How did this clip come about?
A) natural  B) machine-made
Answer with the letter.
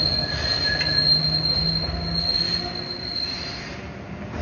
A